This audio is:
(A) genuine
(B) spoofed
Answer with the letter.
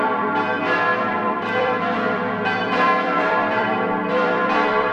B